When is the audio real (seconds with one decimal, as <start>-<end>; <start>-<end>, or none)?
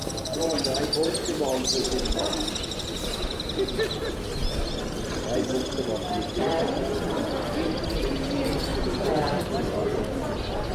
0.6-8.7; 9.4-10.7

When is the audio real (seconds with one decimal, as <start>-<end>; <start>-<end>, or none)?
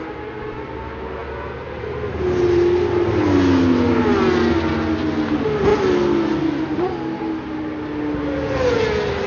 0.0-9.3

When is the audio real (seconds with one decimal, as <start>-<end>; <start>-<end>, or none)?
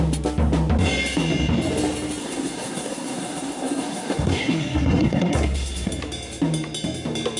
0.0-2.2; 5.9-7.4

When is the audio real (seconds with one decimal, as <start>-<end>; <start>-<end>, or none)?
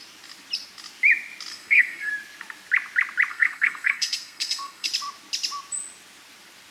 0.0-1.5; 2.1-3.3; 4.9-6.7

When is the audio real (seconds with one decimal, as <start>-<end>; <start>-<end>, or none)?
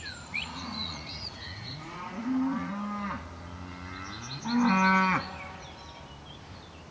2.7-6.9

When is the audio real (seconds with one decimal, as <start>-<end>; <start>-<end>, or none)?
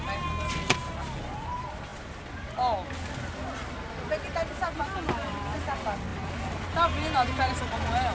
0.0-8.1